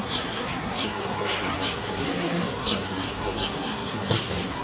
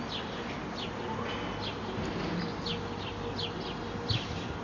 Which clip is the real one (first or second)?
second